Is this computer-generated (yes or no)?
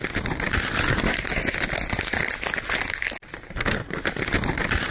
no